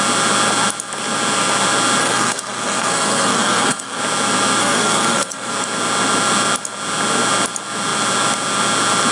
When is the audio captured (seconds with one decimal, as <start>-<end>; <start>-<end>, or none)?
0.0-2.0; 4.0-4.6; 5.5-9.1

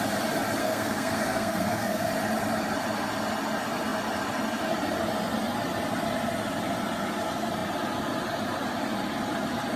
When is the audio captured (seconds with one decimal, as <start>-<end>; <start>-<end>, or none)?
0.0-0.6; 2.1-9.8

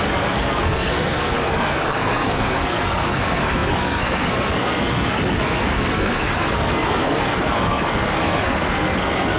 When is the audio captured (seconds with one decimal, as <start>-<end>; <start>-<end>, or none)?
none